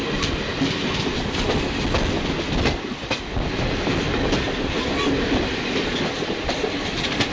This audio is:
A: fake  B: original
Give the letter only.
B